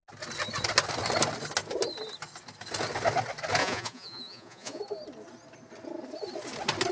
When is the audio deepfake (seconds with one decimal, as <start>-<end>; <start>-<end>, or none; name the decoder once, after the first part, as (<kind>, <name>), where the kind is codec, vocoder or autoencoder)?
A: 3.6-4.8 (vocoder, Vocos)